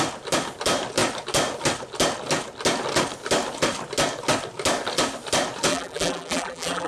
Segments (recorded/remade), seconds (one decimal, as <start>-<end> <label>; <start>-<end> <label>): 0.0-5.7 recorded; 5.7-6.9 remade